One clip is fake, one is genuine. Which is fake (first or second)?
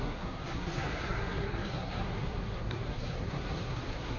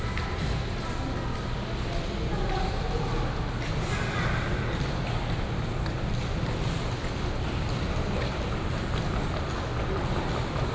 first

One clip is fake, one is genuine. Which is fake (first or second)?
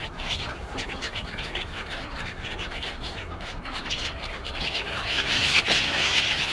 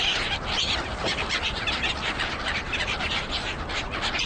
first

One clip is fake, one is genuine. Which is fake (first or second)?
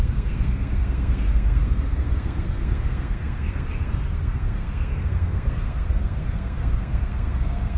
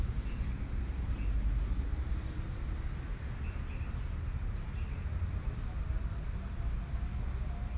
first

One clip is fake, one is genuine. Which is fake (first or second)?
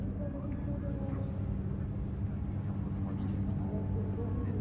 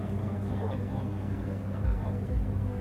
second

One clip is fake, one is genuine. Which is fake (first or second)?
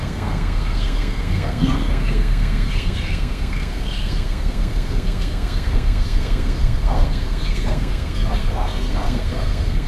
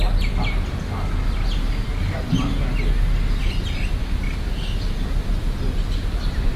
first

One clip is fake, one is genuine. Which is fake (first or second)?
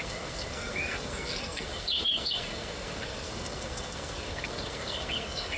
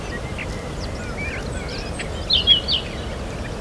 first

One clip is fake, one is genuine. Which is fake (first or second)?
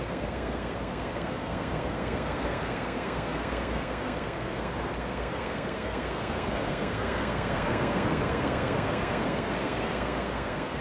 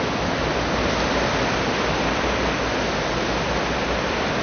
first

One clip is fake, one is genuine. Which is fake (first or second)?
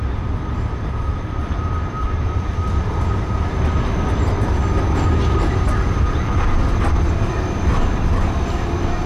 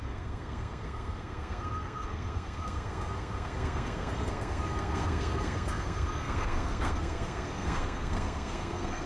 second